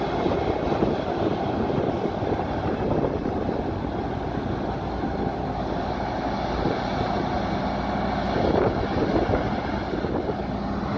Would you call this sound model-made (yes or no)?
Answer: no